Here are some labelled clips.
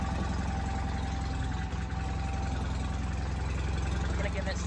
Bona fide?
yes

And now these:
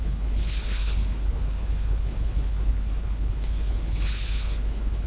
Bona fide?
no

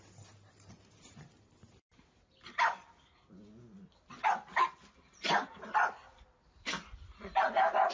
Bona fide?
yes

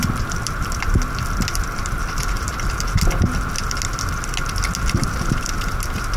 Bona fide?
yes